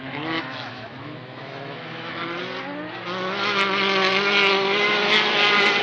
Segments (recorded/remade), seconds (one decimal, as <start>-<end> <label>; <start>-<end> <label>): 0.0-2.2 remade; 2.2-5.8 recorded